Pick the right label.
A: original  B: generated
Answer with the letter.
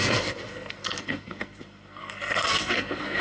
B